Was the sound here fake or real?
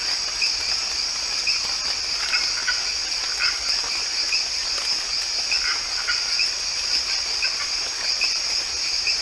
real